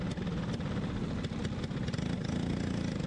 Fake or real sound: real